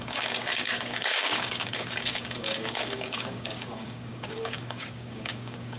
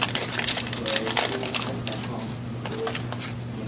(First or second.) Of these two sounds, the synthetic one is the first